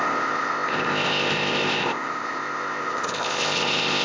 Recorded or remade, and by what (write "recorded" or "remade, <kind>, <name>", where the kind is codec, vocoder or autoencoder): remade, codec, ZipCodec